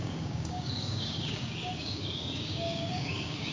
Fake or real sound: fake